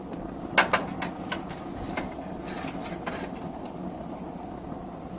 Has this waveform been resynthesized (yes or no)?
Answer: no